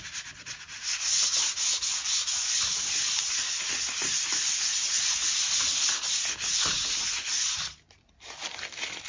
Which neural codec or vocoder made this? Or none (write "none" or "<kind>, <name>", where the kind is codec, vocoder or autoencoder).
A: none